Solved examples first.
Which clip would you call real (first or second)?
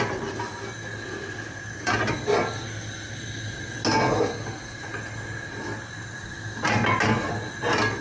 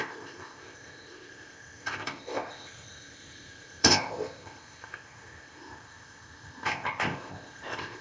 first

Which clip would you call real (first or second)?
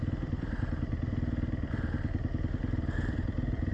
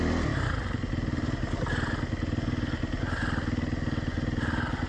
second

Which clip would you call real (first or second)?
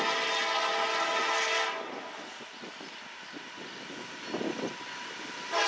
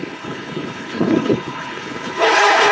first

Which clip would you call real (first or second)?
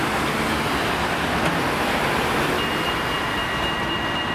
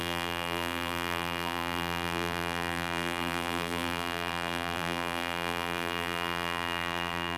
first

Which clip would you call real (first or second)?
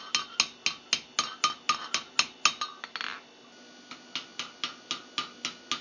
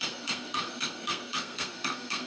first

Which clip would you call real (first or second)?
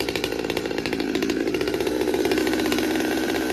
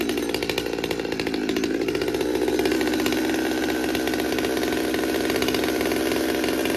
second